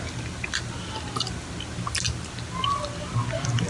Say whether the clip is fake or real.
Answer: real